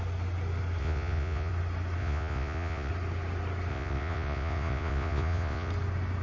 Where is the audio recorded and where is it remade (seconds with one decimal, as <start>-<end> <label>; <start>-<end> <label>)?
0.0-0.8 recorded; 0.8-1.5 remade; 1.5-2.0 recorded; 2.0-2.9 remade; 2.9-3.7 recorded; 3.7-5.7 remade; 5.7-6.2 recorded